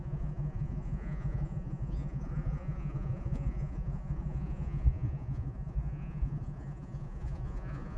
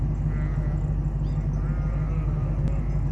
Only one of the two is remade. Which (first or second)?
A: first